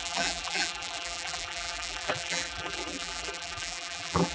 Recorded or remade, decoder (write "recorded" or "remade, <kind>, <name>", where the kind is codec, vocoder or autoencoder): remade, vocoder, BigVGAN v2